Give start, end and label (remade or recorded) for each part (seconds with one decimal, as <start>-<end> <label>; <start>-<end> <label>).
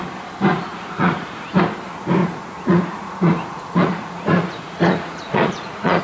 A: 0.0-0.7 recorded; 0.7-1.6 remade; 1.6-2.2 recorded; 2.2-6.0 remade